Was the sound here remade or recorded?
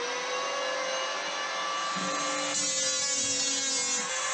recorded